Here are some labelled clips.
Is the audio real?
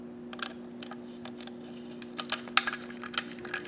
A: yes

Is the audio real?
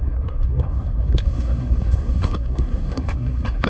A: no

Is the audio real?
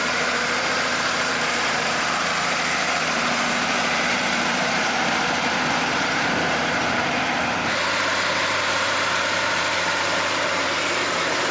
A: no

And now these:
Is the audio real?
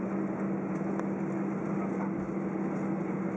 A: yes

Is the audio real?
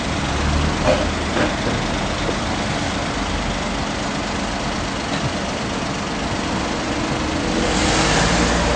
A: yes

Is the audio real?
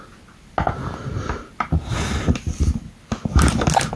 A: yes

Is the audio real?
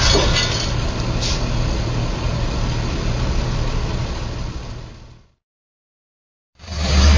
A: yes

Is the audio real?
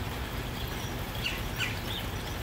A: yes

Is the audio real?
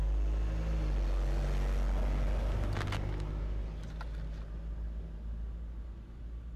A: yes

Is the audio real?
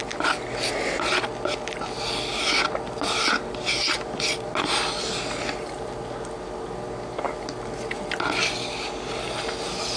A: yes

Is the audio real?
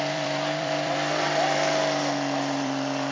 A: no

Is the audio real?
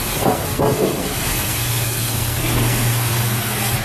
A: no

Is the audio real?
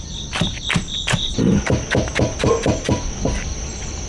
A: yes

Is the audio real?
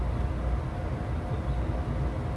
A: yes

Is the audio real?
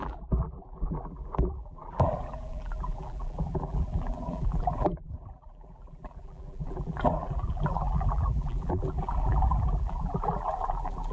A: no